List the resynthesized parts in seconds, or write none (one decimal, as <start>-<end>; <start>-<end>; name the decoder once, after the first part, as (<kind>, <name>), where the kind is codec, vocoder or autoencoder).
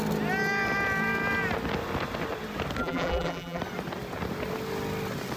2.8-3.6 (vocoder, BigVGAN v2)